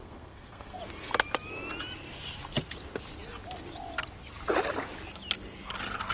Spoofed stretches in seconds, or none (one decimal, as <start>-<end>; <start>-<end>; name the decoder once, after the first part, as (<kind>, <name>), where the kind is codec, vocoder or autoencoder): 0.0-0.8 (codec, SNAC)